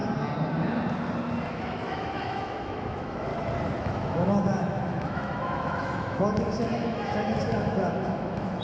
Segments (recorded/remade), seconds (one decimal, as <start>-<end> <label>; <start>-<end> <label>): 0.0-1.5 recorded; 1.5-3.3 remade; 3.3-3.8 recorded; 3.8-8.6 remade